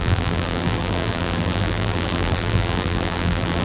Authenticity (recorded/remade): remade